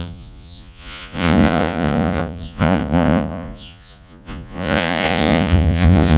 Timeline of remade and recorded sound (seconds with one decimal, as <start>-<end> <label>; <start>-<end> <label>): 0.0-6.2 remade